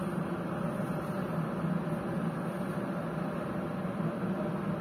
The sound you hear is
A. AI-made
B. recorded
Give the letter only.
B